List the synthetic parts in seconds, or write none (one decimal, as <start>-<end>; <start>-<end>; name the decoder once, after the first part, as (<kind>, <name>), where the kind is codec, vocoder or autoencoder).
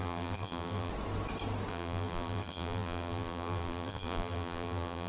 0.0-0.9 (vocoder, BigVGAN v2); 1.7-5.1